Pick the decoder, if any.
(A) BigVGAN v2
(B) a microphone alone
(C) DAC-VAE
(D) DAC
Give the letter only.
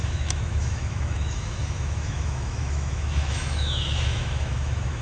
C